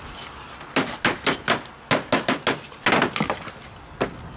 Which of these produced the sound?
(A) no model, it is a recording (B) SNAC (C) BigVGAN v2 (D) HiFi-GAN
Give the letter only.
A